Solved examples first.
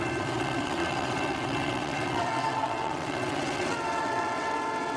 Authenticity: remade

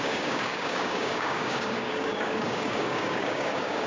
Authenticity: remade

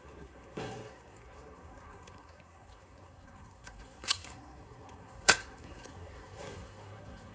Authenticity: remade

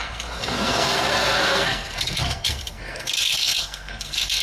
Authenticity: remade